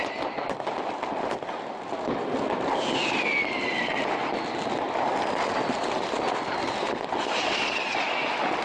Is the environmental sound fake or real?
real